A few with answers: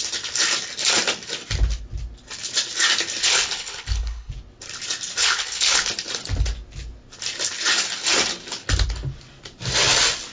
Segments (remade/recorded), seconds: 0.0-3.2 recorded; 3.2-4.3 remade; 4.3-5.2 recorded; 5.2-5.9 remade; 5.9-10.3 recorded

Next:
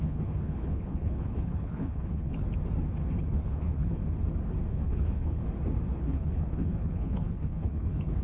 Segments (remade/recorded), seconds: 0.0-2.4 remade; 2.4-3.2 recorded; 3.2-4.0 remade; 4.0-4.7 recorded; 4.7-5.4 remade; 5.4-6.0 recorded; 6.0-8.2 remade

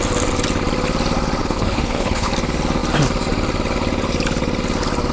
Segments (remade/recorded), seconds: 0.0-1.4 recorded; 1.4-2.3 remade; 2.3-5.1 recorded

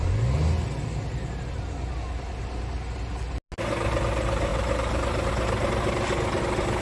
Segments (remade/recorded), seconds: 0.0-6.8 recorded

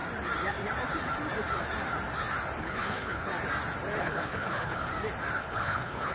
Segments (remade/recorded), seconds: 0.0-2.6 recorded; 2.6-3.3 remade; 3.3-4.0 recorded; 4.0-4.9 remade; 4.9-5.4 recorded; 5.4-6.1 remade

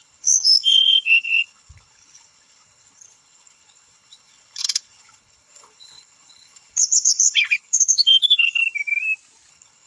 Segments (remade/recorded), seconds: 0.0-8.6 remade; 8.6-9.5 recorded; 9.5-9.9 remade

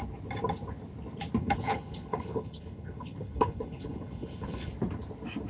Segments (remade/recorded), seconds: 0.0-1.4 recorded; 1.4-4.7 remade; 4.7-5.5 recorded

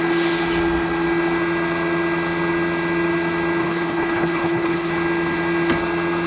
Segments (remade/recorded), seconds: 0.0-3.6 recorded; 3.6-4.9 remade; 4.9-6.3 recorded